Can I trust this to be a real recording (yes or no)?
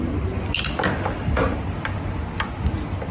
yes